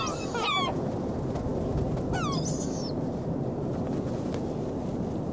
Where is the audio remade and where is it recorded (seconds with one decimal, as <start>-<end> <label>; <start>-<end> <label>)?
0.0-5.3 recorded